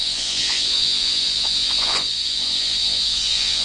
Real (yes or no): no